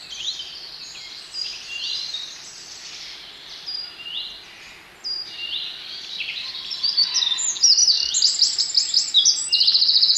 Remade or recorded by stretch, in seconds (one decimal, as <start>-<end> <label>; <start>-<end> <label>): 0.0-1.0 recorded; 1.0-4.5 remade; 4.5-5.7 recorded; 5.7-6.8 remade; 6.8-7.8 recorded; 7.8-8.6 remade; 8.6-10.2 recorded